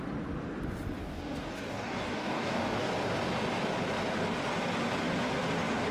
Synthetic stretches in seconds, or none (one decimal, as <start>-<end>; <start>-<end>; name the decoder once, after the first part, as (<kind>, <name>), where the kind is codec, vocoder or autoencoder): 1.0-2.9 (codec, DAC)